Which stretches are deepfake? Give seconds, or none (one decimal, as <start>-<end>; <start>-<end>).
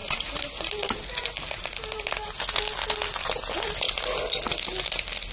none